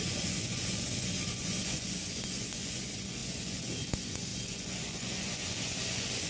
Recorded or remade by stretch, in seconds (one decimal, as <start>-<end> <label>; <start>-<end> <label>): 0.0-6.3 remade